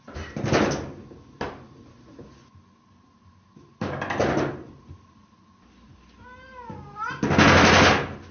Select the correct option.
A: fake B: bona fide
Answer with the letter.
B